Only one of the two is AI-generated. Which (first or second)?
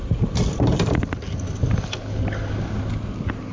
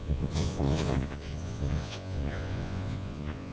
second